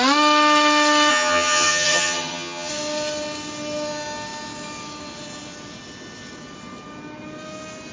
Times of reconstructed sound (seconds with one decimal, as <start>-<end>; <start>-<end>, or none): 1.1-2.7